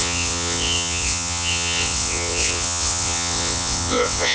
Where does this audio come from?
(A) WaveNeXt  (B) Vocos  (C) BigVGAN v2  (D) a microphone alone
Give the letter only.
A